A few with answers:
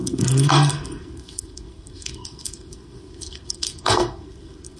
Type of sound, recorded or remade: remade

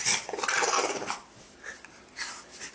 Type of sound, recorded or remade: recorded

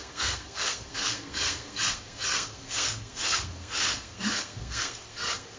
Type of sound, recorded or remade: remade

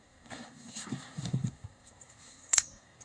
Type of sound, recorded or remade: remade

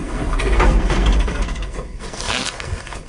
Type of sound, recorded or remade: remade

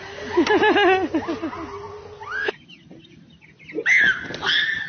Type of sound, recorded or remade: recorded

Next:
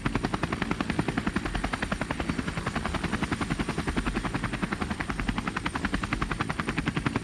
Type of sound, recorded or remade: recorded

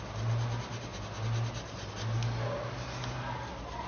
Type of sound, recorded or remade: recorded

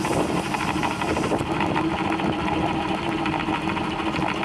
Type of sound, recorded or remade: recorded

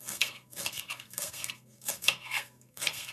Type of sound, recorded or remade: remade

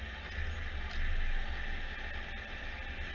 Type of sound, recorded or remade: recorded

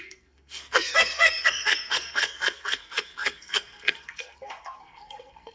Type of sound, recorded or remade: remade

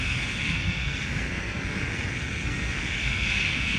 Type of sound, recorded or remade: remade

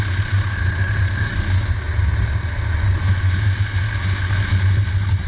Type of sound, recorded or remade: recorded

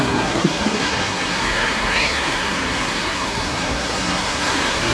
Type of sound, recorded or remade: remade